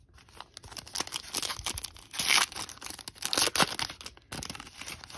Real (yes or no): yes